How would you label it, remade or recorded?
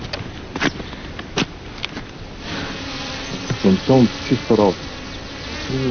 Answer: recorded